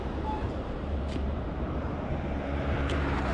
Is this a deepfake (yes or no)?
yes